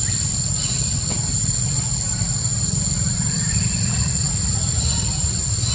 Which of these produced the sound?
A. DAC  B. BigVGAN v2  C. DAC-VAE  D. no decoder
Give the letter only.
D